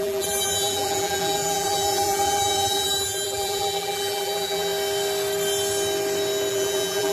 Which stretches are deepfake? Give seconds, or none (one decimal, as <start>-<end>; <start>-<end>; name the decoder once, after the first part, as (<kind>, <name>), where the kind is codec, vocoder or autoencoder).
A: 0.0-4.7 (vocoder, BigVGAN v2); 6.5-7.1

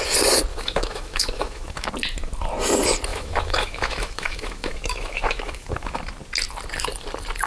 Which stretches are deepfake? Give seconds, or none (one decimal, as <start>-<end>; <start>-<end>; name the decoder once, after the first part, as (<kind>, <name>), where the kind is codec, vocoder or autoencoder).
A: 0.5-1.9 (autoencoder, DAC-VAE); 3.1-6.0

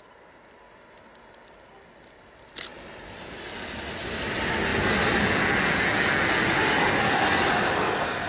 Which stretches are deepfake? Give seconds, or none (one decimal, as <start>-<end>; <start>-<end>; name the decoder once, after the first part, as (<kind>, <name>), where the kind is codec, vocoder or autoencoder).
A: none

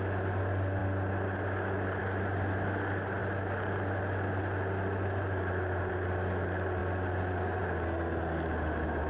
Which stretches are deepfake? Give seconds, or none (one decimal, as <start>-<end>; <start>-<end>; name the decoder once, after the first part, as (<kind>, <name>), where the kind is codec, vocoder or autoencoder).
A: none